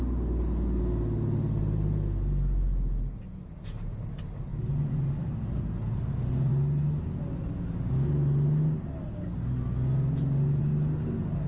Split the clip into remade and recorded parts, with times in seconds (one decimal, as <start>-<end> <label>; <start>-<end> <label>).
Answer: 0.0-11.5 recorded